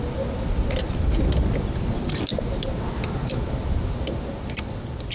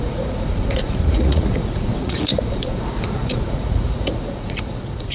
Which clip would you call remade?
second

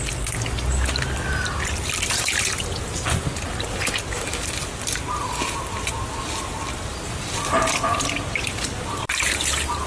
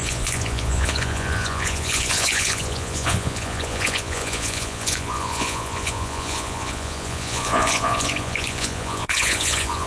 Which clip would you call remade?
second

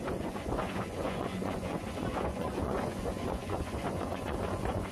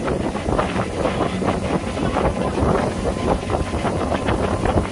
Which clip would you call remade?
first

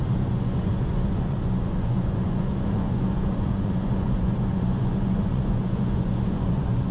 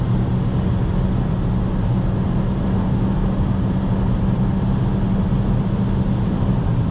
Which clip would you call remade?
first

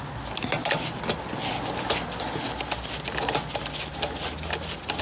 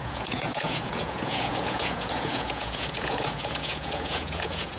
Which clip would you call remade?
second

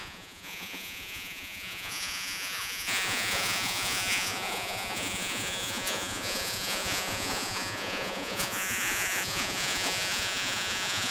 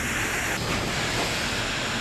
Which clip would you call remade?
first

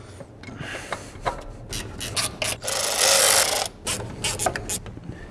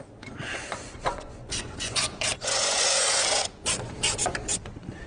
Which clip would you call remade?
second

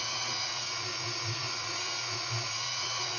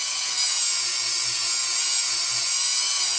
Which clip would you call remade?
first